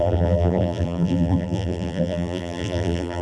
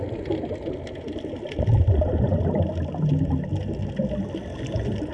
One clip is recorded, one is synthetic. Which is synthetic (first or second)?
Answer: first